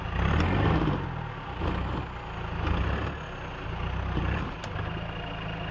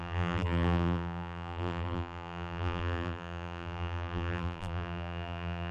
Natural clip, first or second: first